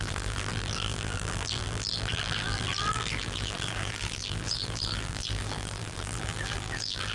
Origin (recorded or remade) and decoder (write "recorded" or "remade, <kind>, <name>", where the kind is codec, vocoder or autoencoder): remade, vocoder, BigVGAN v2